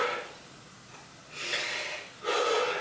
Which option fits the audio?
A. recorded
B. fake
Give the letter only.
A